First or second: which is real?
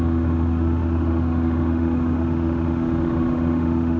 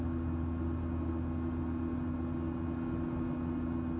second